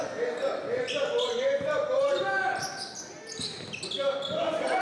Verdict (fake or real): real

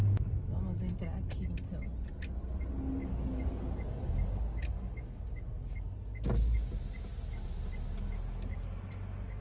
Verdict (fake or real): real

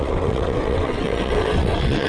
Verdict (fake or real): fake